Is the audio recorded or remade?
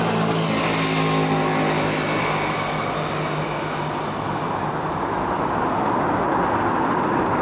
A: recorded